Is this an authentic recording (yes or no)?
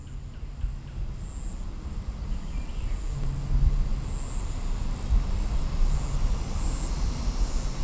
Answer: yes